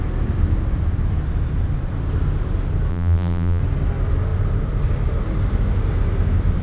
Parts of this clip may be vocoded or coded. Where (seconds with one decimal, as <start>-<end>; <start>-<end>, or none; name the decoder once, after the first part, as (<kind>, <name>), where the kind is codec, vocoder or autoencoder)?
2.9-3.6 (vocoder, BigVGAN v2)